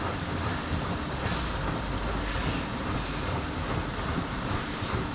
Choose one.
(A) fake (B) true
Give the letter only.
B